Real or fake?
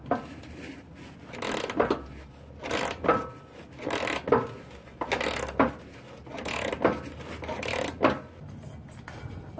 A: real